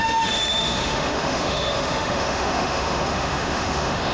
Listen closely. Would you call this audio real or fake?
fake